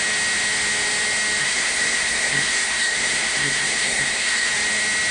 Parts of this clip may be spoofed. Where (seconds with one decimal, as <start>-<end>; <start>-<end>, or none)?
1.4-4.5